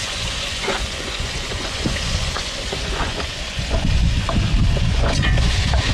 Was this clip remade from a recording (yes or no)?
yes